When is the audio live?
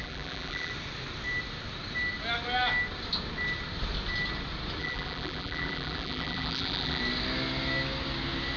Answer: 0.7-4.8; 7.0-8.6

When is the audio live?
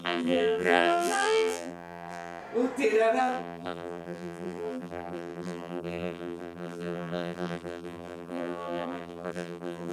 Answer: 2.4-3.2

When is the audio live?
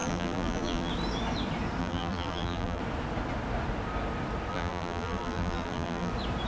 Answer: 0.9-1.8; 2.8-4.5; 6.1-6.5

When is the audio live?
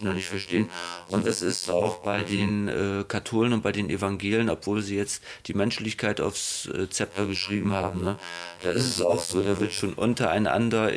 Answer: 2.5-7.1; 9.8-11.0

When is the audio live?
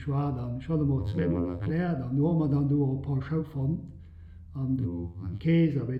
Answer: 0.0-1.0; 1.7-4.8; 5.4-6.0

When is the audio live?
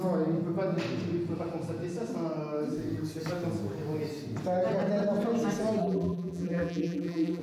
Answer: 0.0-5.8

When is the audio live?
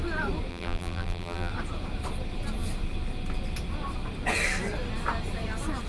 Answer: 0.0-0.5; 1.5-5.9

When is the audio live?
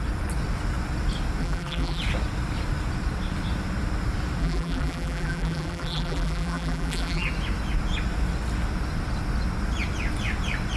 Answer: 0.0-1.4; 2.0-4.4; 7.3-10.8